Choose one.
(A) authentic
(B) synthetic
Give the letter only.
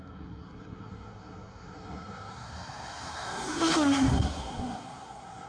B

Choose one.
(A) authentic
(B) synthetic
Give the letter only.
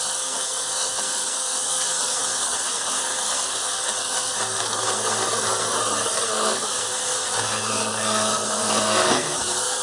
B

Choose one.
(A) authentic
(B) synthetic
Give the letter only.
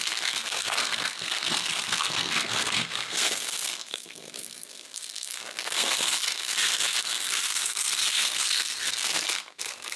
B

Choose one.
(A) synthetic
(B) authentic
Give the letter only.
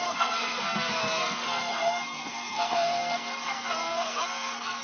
A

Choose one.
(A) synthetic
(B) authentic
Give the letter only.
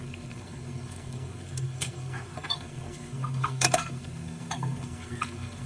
A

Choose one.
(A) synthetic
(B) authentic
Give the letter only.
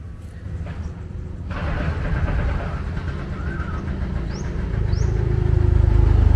B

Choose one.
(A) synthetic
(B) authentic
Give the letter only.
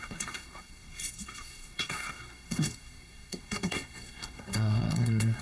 A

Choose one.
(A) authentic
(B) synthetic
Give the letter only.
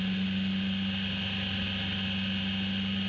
A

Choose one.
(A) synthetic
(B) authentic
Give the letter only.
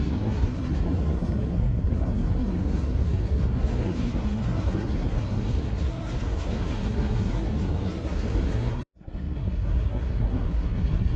A